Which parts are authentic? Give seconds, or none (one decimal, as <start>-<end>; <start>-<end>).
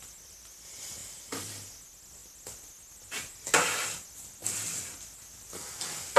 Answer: 0.0-1.0; 1.7-4.4; 5.1-6.2